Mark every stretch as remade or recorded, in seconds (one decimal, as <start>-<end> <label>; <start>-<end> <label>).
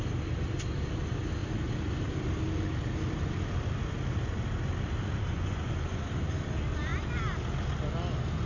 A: 0.0-5.3 recorded; 5.3-6.0 remade; 6.0-8.5 recorded